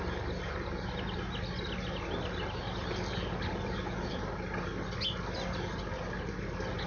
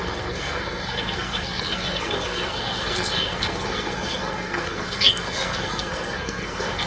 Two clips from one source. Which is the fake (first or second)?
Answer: second